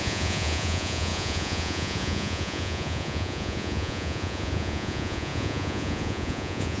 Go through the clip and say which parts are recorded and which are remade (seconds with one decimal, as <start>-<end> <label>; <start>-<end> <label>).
0.0-6.8 remade